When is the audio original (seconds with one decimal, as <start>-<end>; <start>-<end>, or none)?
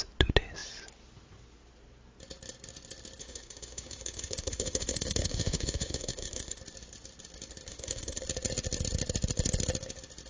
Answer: 0.0-3.2; 6.6-7.7; 8.2-10.3